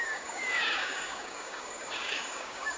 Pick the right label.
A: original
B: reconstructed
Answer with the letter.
B